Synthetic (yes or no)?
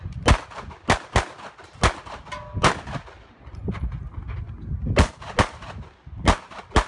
no